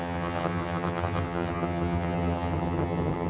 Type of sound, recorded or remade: remade